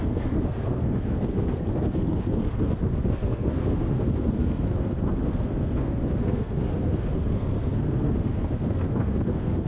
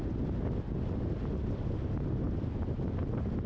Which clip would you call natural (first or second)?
second